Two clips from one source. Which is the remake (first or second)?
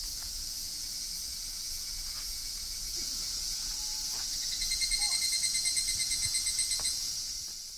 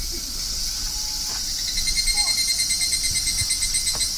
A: first